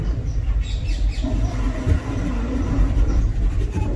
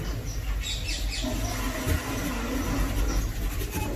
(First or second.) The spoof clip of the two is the first